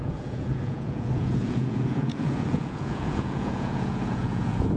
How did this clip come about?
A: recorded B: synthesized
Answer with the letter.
B